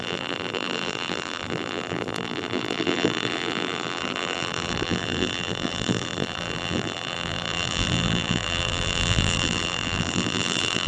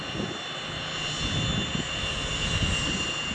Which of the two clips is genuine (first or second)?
second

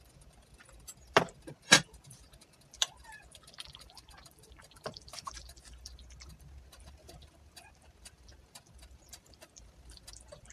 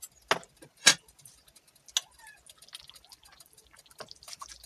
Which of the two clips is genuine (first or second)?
second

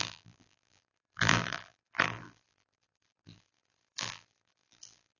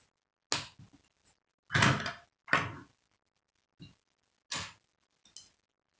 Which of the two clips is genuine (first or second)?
second